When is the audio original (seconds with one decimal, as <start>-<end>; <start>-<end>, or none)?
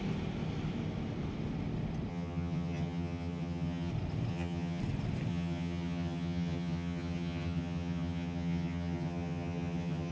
0.0-2.1; 3.9-4.3; 4.8-5.3